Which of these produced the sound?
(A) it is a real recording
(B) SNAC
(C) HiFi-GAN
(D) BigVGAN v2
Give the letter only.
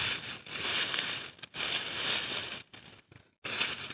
A